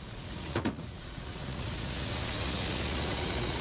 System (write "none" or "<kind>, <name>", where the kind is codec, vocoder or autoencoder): vocoder, Vocos